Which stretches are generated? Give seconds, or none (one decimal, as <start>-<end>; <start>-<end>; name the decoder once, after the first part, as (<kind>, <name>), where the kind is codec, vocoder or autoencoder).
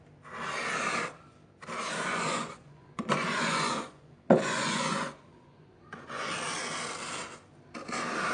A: 2.1-6.3 (vocoder, Vocos)